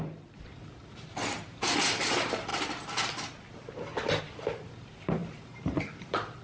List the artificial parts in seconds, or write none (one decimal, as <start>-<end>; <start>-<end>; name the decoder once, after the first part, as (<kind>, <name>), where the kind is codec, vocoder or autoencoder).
0.0-2.5 (vocoder, BigVGAN v2); 4.2-6.4